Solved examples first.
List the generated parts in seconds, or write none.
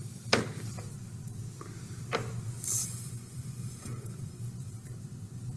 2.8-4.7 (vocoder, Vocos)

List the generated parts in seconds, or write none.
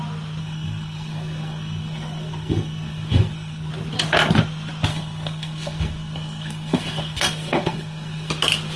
0.4-3.7 (codec, SNAC); 4.9-8.3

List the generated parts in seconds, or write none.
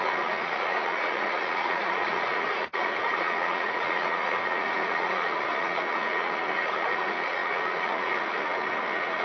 0.0-9.2 (vocoder, Vocos)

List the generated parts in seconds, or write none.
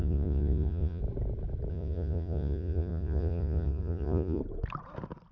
0.0-1.0 (vocoder, Vocos); 1.7-4.4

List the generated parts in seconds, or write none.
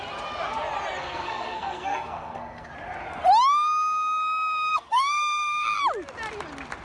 1.0-2.7 (codec, SNAC); 4.7-5.8